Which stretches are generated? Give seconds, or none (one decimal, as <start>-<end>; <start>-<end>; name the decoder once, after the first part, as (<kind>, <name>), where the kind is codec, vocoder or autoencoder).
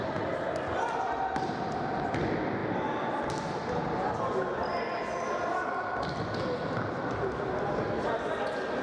none